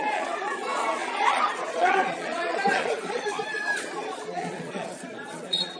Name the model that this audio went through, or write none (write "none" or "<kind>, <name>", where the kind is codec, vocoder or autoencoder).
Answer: vocoder, Vocos